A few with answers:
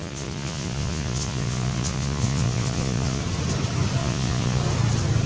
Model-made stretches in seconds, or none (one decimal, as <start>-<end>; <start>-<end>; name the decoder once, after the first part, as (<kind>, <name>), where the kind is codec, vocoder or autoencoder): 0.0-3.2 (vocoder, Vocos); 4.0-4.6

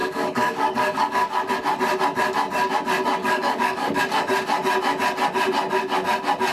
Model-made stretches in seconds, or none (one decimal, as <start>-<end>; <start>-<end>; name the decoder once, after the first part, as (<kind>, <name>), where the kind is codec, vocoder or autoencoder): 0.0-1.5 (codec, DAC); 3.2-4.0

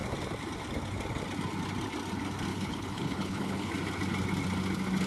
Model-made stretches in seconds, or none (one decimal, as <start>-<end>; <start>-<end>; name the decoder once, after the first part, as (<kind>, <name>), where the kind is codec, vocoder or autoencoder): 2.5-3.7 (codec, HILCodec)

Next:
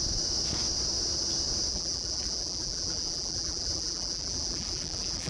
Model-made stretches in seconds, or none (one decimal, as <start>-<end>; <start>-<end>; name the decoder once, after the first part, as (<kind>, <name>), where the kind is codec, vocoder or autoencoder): 1.7-5.3 (vocoder, BigVGAN v2)